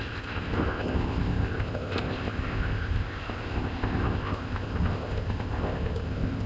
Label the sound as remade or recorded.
remade